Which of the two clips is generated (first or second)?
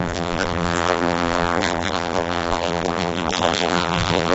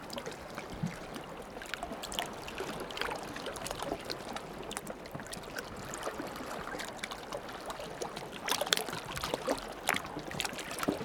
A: first